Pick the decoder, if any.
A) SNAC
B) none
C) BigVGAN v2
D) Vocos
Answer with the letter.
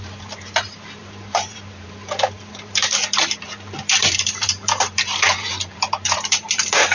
C